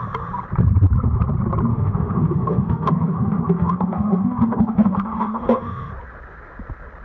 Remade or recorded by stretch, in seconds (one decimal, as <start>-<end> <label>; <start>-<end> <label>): 0.0-1.7 recorded; 1.7-5.9 remade; 5.9-7.0 recorded

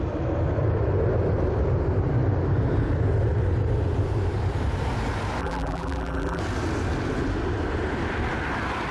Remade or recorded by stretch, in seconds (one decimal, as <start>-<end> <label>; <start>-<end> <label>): 0.0-5.4 recorded; 5.4-6.4 remade; 6.4-8.9 recorded